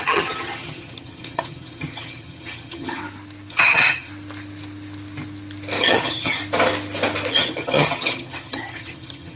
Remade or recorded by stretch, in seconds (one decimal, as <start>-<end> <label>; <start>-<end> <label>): 0.0-3.0 remade; 3.0-3.5 recorded; 3.5-4.1 remade; 4.1-5.8 recorded; 5.8-6.4 remade; 6.4-7.3 recorded; 7.3-9.4 remade

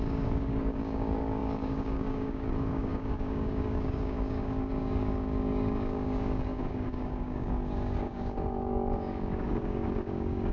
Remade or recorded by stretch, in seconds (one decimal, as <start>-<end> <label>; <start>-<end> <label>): 0.0-10.5 remade

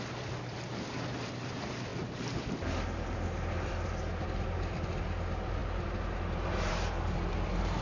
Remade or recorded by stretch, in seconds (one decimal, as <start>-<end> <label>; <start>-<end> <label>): 0.0-7.8 recorded

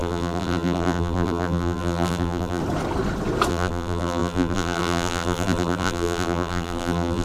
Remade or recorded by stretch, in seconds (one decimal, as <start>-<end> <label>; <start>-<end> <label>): 0.0-2.6 remade; 2.6-3.5 recorded; 3.5-7.2 remade